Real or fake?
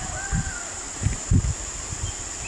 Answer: real